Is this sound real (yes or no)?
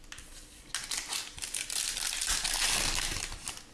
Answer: yes